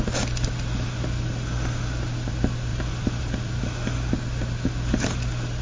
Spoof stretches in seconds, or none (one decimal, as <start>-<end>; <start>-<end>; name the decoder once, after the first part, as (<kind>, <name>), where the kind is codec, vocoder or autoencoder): 2.7-3.6 (vocoder, BigVGAN v2)